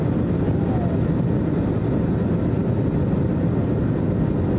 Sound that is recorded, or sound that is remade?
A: recorded